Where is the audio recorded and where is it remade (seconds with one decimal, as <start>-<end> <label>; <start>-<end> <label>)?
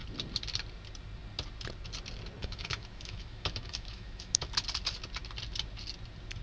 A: 0.0-2.4 recorded; 2.4-4.5 remade; 4.5-6.4 recorded